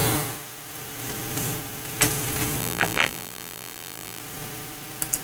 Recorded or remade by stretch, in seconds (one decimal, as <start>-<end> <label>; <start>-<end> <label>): 0.0-2.6 recorded; 2.6-4.2 remade; 4.2-5.2 recorded